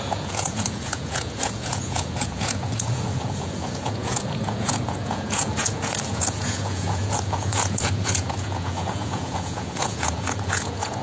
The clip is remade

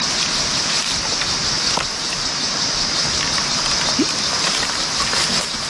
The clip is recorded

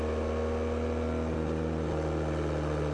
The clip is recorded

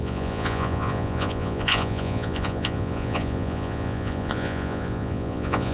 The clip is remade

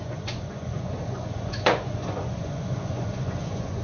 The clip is remade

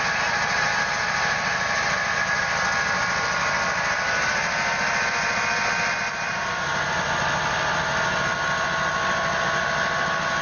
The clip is recorded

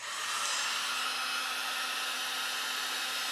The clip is recorded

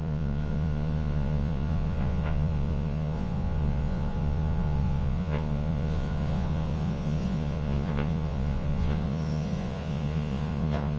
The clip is remade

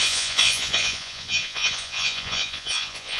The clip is remade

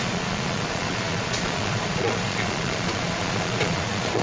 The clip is remade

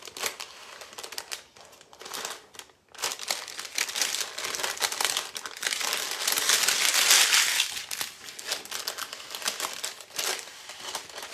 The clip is recorded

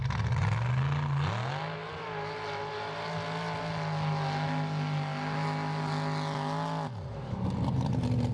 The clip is recorded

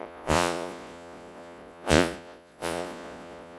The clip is remade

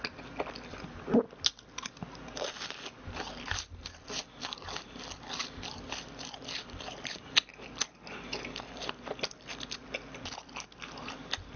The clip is recorded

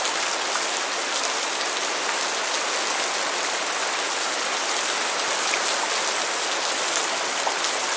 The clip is recorded